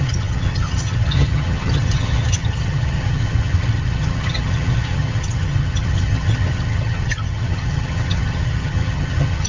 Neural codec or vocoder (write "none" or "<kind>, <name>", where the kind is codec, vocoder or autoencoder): vocoder, HiFi-GAN